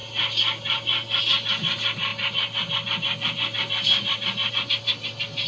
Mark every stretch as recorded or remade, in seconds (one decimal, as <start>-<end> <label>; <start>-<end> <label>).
0.0-1.2 remade; 1.2-2.1 recorded; 2.1-4.5 remade; 4.5-5.5 recorded